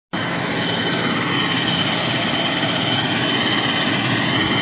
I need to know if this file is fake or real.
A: real